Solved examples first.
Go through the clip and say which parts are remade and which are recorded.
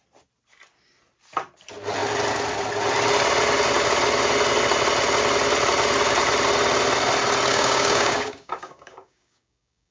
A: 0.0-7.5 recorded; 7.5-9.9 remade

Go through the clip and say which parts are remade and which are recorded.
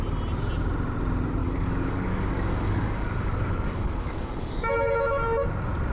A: 0.0-1.4 recorded; 1.4-4.9 remade; 4.9-5.9 recorded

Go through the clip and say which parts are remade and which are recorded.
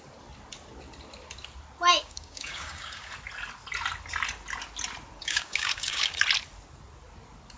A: 0.0-1.9 recorded; 1.9-3.1 remade; 3.1-5.2 recorded; 5.2-6.2 remade; 6.2-7.6 recorded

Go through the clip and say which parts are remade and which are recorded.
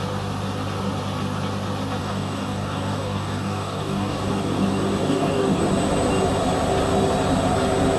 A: 0.0-2.0 recorded; 2.0-4.3 remade; 4.3-5.0 recorded; 5.0-5.6 remade; 5.6-8.0 recorded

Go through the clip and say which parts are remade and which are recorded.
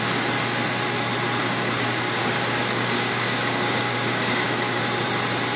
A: 0.0-1.4 recorded; 1.4-4.8 remade; 4.8-5.6 recorded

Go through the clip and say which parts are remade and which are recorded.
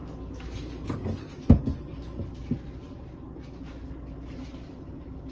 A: 0.0-1.7 remade; 1.7-5.3 recorded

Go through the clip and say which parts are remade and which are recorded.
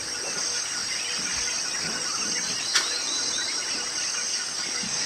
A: 0.0-4.3 recorded; 4.3-5.1 remade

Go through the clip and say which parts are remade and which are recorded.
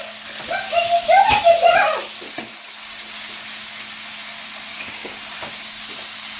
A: 0.0-4.7 recorded; 4.7-5.5 remade; 5.5-6.4 recorded